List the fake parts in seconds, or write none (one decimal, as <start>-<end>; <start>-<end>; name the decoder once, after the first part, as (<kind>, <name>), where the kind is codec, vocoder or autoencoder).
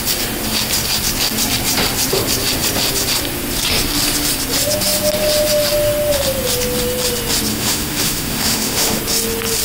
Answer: 7.5-9.0 (autoencoder, DAC-VAE)